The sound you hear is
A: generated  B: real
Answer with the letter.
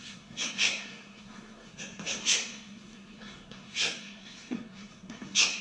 A